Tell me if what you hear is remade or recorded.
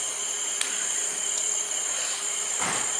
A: remade